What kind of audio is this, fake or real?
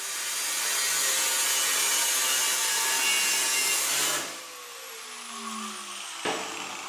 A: real